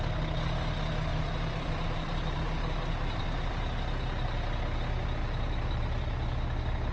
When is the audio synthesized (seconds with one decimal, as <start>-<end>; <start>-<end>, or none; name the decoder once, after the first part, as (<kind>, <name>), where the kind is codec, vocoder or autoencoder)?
1.1-3.5 (vocoder, BigVGAN v2); 5.2-5.8